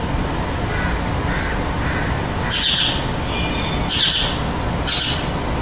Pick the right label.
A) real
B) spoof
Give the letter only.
A